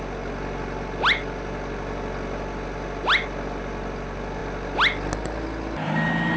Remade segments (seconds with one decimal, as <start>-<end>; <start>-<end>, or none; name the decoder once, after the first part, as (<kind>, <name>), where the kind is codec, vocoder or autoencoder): none